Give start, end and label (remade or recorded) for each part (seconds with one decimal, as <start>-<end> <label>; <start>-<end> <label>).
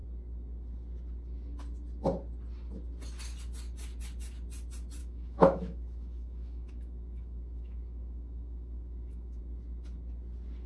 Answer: 0.0-5.0 recorded; 5.0-9.4 remade; 9.4-10.7 recorded